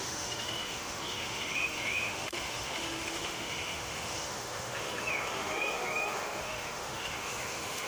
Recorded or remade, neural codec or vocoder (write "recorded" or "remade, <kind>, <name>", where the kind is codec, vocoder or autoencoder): remade, autoencoder, DAC-VAE